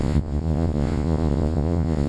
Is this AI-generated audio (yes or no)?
yes